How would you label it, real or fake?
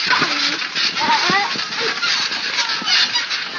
real